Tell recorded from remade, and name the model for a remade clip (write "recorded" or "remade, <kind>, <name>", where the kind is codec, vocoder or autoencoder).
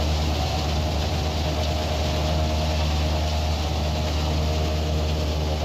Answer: recorded